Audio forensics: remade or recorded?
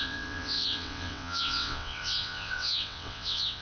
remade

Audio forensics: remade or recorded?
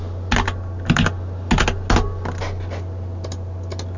recorded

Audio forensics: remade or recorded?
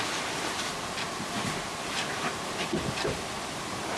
recorded